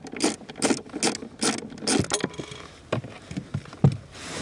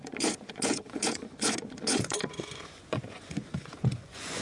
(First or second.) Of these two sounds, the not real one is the second